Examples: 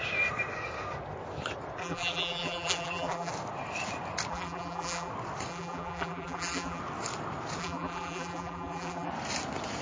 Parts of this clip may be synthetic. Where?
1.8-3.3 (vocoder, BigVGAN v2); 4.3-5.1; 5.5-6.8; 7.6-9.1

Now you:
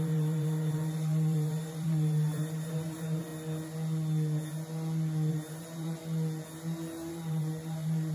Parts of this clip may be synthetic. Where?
0.0-3.3 (vocoder, BigVGAN v2); 5.3-6.0; 7.1-8.1

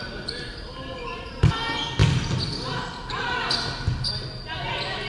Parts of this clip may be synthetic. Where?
0.0-1.3 (vocoder, BigVGAN v2)